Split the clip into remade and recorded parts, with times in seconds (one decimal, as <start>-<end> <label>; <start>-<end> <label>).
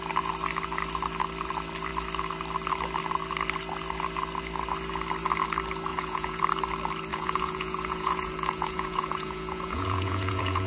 0.0-5.9 recorded; 5.9-6.4 remade; 6.4-7.1 recorded; 7.1-10.7 remade